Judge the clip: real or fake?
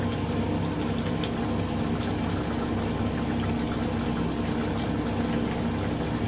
real